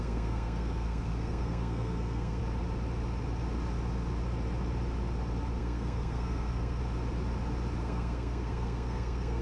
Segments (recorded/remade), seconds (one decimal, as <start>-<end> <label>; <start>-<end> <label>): 0.0-2.4 remade; 2.4-5.6 recorded; 5.6-6.8 remade; 6.8-7.8 recorded; 7.8-9.4 remade